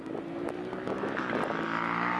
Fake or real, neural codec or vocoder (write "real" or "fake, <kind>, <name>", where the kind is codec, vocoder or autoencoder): real